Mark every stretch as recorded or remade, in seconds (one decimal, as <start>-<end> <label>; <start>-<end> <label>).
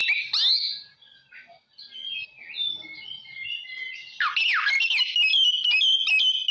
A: 0.0-6.5 recorded